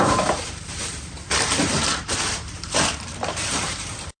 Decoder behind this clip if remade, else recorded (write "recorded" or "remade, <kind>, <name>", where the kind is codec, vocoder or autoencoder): remade, vocoder, BigVGAN v2